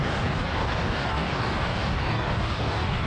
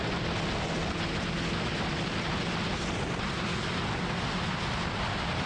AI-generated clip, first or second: first